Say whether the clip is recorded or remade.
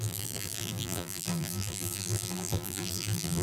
remade